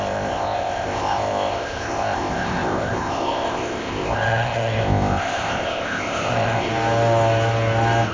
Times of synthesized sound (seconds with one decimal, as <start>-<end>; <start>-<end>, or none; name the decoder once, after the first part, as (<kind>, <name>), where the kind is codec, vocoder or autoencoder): 0.0-6.7 (codec, ZipCodec)